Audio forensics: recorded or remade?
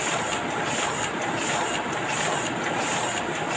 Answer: remade